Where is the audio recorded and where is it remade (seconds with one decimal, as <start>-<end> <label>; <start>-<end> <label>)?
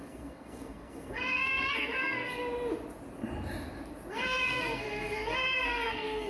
0.0-2.4 remade; 2.4-4.1 recorded; 4.1-6.3 remade